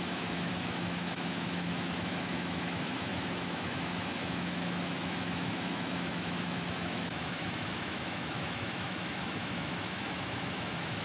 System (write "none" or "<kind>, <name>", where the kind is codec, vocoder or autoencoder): autoencoder, DAC-VAE